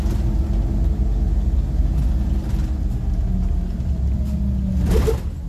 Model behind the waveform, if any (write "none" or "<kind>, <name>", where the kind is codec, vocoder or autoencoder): none